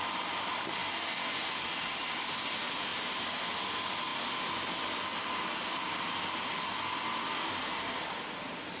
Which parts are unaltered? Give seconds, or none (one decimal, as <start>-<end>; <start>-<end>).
0.0-2.9; 3.4-8.8